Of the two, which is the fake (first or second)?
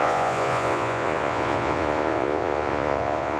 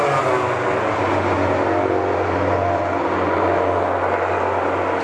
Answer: first